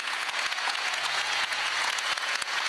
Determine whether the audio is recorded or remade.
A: remade